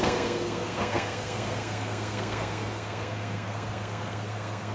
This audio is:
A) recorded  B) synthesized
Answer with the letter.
B